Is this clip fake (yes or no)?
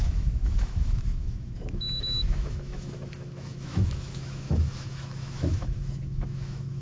yes